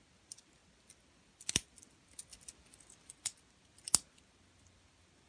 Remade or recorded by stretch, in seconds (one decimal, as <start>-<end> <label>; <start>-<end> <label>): 0.0-5.3 recorded